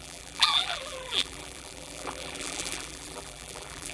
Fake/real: fake